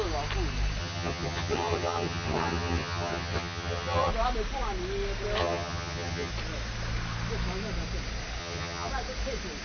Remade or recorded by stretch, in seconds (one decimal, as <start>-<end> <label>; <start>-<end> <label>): 0.0-0.8 recorded; 0.8-4.1 remade; 4.1-5.4 recorded; 5.4-6.3 remade; 6.3-8.4 recorded; 8.4-8.9 remade; 8.9-9.6 recorded